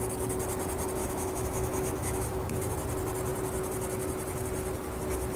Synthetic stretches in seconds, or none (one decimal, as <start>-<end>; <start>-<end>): 1.0-2.7